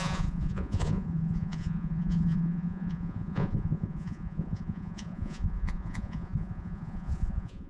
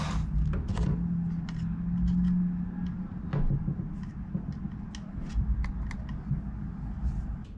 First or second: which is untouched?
second